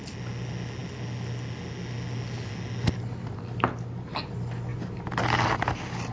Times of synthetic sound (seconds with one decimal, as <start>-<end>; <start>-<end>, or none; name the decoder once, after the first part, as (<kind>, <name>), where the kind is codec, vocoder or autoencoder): none